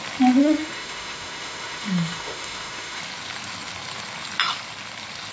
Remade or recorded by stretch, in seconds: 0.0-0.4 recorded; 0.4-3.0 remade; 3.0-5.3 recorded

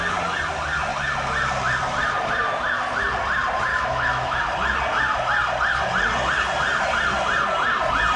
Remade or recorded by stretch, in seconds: 0.0-3.7 recorded; 3.7-4.4 remade; 4.4-8.2 recorded

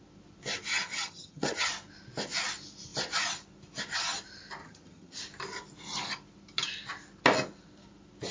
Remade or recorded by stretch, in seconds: 0.0-0.7 recorded; 0.7-1.7 remade; 1.7-4.6 recorded; 4.6-5.2 remade; 5.2-8.3 recorded

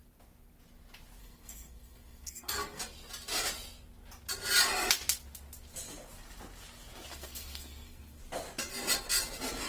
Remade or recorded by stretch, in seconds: 0.0-1.2 recorded; 1.2-2.8 remade; 2.8-7.1 recorded; 7.1-8.2 remade; 8.2-9.7 recorded

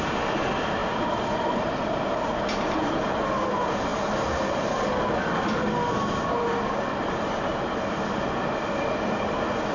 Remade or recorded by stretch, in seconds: 0.0-0.8 recorded; 0.8-3.0 remade; 3.0-9.7 recorded